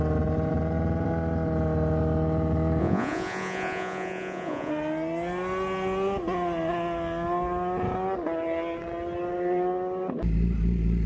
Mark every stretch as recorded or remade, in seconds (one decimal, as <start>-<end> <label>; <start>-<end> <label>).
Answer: 0.0-2.8 recorded; 2.8-4.7 remade; 4.7-11.1 recorded